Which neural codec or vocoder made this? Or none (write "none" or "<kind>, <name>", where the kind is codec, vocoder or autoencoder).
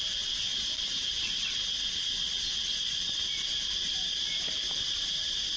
none